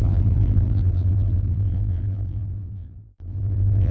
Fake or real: fake